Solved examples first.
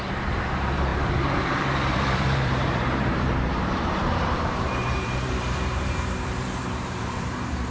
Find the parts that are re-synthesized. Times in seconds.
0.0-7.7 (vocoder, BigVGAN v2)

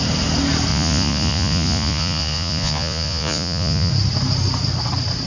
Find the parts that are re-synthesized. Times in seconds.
0.7-3.9 (vocoder, Vocos)